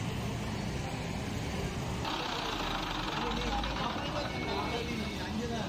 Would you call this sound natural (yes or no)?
yes